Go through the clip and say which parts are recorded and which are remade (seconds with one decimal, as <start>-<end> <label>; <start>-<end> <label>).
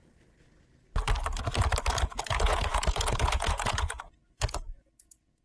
0.0-1.9 recorded; 1.9-5.4 remade